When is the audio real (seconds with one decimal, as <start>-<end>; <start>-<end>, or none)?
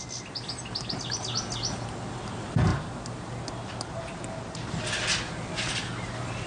0.0-6.5